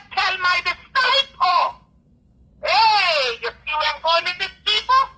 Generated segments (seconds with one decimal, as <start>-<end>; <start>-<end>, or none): 1.5-2.5; 3.6-5.2